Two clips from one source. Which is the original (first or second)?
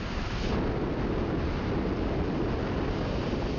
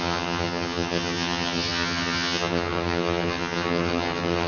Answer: first